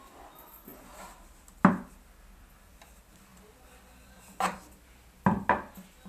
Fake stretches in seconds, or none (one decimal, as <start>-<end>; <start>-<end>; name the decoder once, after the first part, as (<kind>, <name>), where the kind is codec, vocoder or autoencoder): none